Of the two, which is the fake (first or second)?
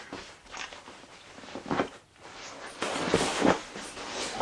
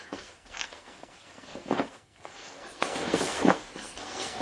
second